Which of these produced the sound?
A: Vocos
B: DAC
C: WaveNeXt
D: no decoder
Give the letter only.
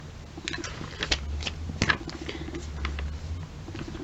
D